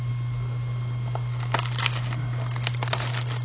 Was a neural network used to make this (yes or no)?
no